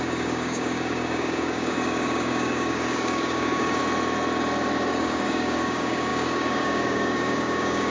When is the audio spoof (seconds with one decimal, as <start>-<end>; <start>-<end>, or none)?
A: 0.0-3.8; 4.9-7.9